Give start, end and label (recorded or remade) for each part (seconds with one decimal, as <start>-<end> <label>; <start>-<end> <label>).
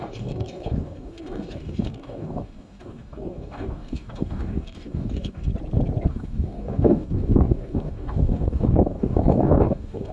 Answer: 0.0-5.5 remade; 5.5-6.1 recorded; 6.1-10.1 remade